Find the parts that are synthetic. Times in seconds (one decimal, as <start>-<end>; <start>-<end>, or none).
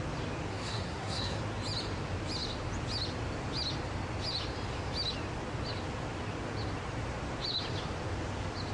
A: 0.5-1.4